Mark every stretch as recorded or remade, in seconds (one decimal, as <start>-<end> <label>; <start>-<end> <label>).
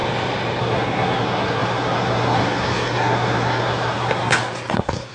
0.0-0.6 recorded; 0.6-5.1 remade